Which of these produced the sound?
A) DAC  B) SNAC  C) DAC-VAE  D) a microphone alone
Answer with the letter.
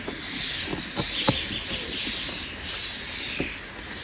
D